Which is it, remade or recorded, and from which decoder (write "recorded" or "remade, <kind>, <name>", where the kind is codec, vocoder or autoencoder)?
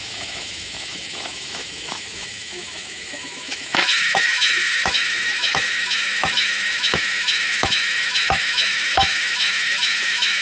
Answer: remade, autoencoder, DAC-VAE